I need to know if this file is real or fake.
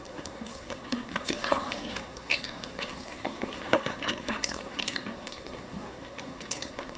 fake